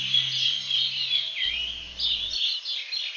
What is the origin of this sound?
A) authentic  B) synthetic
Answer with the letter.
A